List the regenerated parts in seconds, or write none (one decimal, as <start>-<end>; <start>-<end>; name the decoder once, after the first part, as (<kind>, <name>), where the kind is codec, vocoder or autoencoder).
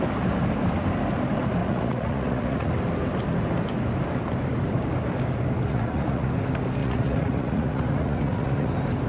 1.6-2.7 (vocoder, Vocos); 5.7-6.3; 6.8-8.7